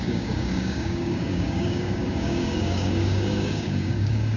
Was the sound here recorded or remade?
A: remade